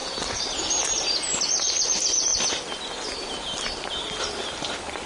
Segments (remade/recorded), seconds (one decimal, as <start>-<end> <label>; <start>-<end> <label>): 0.0-5.1 recorded

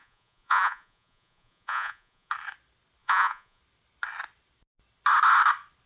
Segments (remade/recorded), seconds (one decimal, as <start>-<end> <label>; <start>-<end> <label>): 0.0-2.3 remade; 2.3-3.0 recorded; 3.0-3.6 remade; 3.6-5.9 recorded

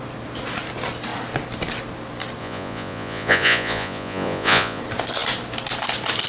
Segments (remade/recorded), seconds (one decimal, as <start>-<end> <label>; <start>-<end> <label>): 0.0-2.4 recorded; 2.4-4.8 remade; 4.8-6.3 recorded

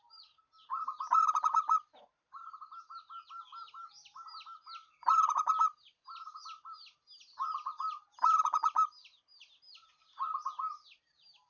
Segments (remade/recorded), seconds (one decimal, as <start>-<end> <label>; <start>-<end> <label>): 0.0-11.5 recorded

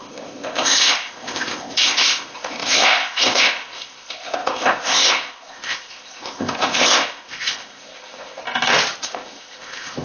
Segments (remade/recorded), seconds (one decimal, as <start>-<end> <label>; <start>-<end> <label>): 0.0-8.4 remade; 8.4-9.0 recorded; 9.0-10.0 remade

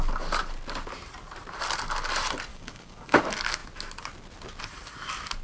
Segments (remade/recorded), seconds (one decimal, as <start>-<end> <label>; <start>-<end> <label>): 0.0-2.5 recorded; 2.5-3.2 remade; 3.2-5.4 recorded